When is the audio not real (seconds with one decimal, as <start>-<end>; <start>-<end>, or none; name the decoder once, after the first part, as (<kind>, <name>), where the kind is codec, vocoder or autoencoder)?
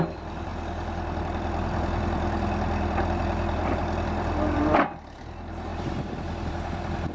0.0-0.5 (vocoder, BigVGAN v2); 1.2-7.1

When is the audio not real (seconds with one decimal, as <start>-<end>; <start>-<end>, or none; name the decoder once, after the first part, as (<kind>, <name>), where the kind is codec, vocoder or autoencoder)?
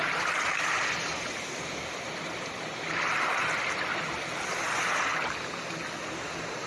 none